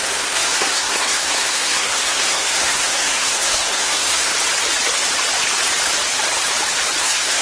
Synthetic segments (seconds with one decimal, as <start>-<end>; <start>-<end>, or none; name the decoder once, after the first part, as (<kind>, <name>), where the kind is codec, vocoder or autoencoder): 0.0-4.3 (codec, SNAC); 7.0-7.4